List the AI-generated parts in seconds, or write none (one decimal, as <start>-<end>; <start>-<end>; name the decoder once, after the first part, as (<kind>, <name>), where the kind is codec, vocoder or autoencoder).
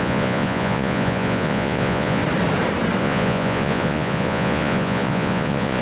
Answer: 0.0-2.2 (vocoder, Vocos); 3.0-5.8